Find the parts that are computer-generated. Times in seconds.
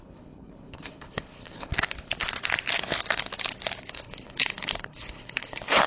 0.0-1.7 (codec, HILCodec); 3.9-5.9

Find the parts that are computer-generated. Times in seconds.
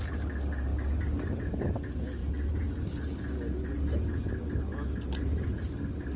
none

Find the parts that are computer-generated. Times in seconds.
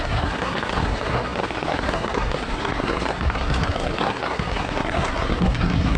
0.0-6.0 (codec, SNAC)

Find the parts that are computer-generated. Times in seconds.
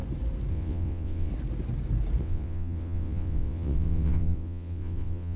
0.5-1.3 (vocoder, WaveNeXt); 2.2-5.4